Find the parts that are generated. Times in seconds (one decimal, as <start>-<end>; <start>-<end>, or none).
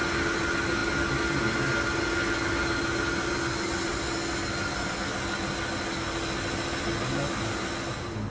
none